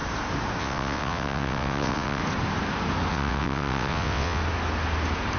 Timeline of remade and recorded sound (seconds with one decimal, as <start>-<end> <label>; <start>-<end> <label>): 0.0-0.6 recorded; 0.6-2.2 remade; 2.2-3.1 recorded; 3.1-4.4 remade; 4.4-5.4 recorded